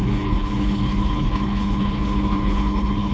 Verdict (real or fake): fake